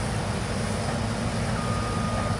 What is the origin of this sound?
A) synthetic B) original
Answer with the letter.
B